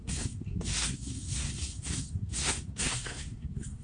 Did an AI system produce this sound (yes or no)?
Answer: yes